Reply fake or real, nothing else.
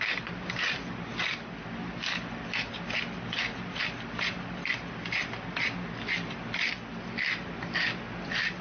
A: real